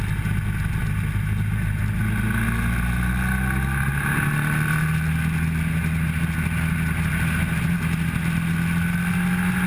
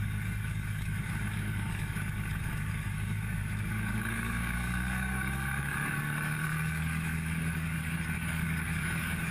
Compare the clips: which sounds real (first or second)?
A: first